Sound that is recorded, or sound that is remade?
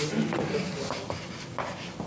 recorded